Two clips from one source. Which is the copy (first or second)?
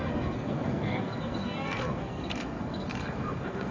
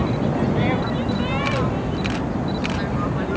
first